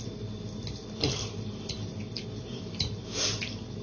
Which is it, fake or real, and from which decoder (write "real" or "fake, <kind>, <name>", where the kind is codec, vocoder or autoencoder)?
real